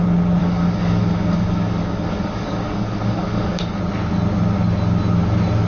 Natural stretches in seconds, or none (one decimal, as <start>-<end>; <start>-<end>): 0.0-0.4; 3.8-5.7